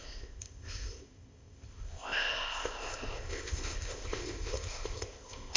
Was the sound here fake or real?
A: fake